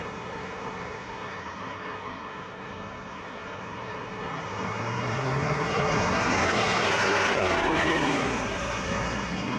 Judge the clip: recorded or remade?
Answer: remade